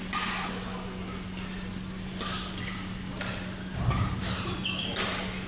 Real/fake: real